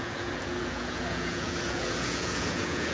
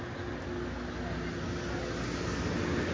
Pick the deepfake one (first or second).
first